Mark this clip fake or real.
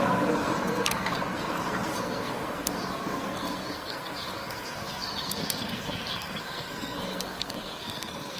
fake